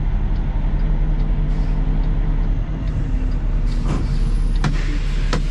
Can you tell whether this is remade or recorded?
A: recorded